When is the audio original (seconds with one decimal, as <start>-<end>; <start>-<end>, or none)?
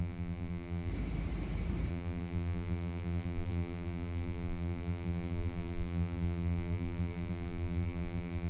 0.9-1.9